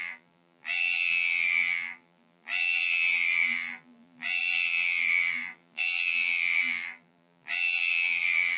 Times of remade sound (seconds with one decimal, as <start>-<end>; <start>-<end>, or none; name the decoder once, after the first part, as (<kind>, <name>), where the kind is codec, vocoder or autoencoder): 0.0-8.6 (vocoder, BigVGAN v2)